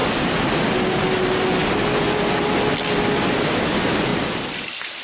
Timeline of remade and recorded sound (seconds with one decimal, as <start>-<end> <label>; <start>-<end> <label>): 0.0-5.0 recorded